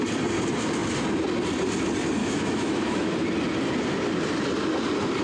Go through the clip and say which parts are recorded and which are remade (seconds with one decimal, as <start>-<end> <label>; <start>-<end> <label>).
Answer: 0.0-2.2 recorded; 2.2-3.1 remade; 3.1-5.2 recorded